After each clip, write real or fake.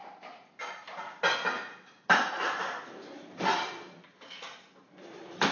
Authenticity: real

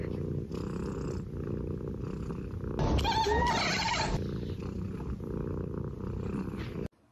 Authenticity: real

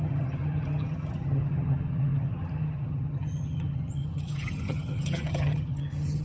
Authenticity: fake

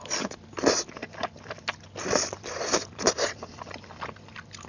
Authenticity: real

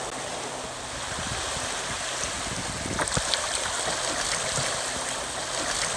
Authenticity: real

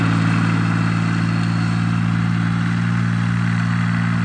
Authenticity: real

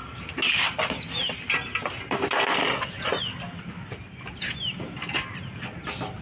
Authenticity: real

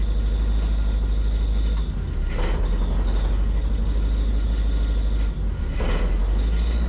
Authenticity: real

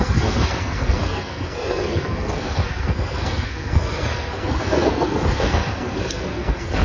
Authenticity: fake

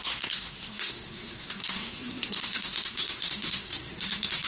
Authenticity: fake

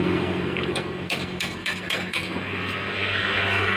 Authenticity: fake